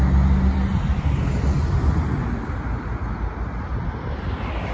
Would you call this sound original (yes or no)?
yes